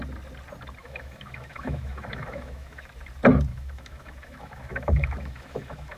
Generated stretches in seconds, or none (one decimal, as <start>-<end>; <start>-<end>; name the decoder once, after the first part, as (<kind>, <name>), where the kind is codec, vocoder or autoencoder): 0.8-2.9 (autoencoder, DAC-VAE); 3.5-6.0